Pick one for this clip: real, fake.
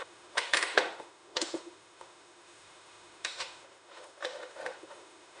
fake